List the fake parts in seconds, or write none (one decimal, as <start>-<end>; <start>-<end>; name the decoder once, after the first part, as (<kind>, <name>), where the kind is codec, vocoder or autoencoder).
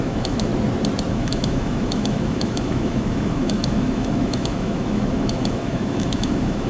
0.0-0.5 (autoencoder, DAC-VAE); 1.1-6.7